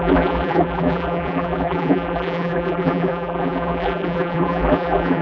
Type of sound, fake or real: fake